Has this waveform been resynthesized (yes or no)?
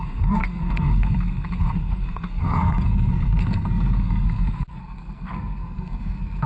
yes